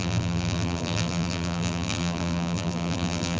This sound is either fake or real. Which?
fake